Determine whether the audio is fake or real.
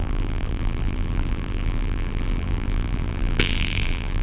fake